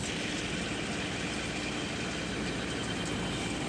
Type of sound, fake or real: real